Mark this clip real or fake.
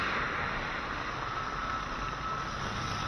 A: real